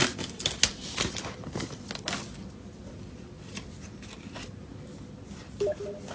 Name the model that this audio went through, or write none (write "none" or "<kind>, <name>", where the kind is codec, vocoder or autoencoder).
none